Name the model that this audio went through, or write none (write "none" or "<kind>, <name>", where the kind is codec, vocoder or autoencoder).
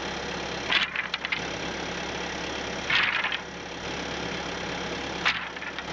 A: none